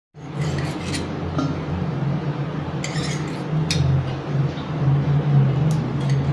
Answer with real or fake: real